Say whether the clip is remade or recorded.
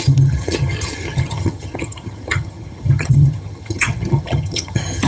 remade